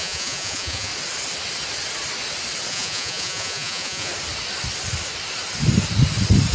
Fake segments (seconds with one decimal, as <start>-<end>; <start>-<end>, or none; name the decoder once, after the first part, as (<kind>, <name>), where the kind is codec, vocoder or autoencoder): 0.0-0.9 (vocoder, Vocos); 2.7-4.1